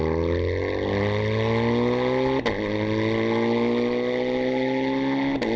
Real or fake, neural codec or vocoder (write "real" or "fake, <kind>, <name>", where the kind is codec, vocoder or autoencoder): real